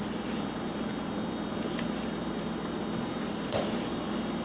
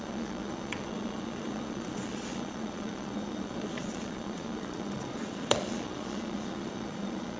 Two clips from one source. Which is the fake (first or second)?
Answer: second